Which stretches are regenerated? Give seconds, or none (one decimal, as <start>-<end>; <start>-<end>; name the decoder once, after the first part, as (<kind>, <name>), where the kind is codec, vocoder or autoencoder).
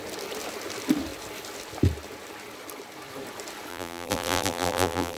3.7-5.2 (vocoder, BigVGAN v2)